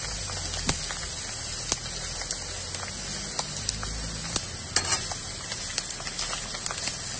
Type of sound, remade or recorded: recorded